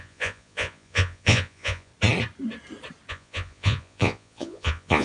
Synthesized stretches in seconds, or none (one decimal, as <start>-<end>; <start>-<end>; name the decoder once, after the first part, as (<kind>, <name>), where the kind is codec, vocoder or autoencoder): 0.0-1.9 (vocoder, Vocos); 3.1-5.0